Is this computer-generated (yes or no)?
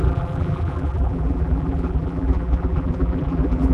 yes